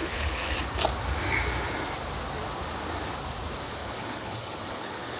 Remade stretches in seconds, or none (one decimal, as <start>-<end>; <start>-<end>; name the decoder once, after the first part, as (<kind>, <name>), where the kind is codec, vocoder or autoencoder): 0.0-0.6 (codec, HILCodec); 3.8-5.2